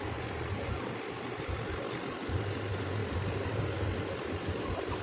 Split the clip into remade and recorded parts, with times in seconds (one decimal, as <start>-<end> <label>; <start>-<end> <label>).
0.0-5.0 recorded